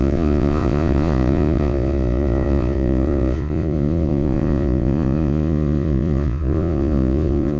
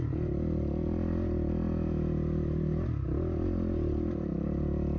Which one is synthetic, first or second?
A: first